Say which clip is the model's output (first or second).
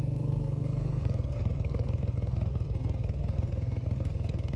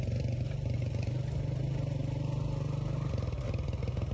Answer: first